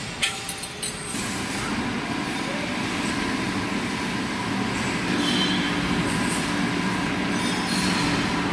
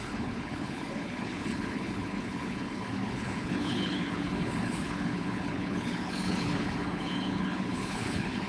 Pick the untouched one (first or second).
first